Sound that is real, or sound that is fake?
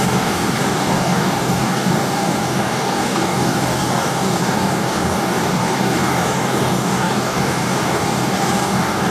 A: fake